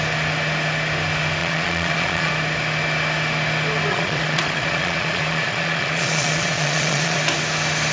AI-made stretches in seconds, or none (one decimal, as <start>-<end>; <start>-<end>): 1.4-2.3; 3.9-7.2